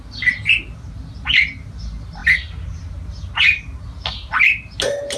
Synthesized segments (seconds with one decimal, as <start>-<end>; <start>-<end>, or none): none